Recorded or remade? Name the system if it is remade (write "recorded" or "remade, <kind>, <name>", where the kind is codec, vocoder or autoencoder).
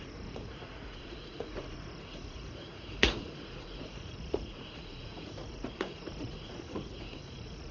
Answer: remade, vocoder, Vocos